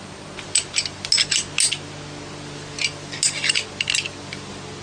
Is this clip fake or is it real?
real